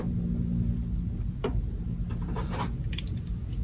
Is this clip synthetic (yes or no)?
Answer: no